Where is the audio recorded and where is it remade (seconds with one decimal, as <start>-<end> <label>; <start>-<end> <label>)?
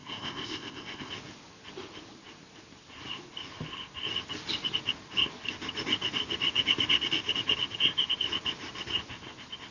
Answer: 0.0-1.1 remade; 1.1-9.7 recorded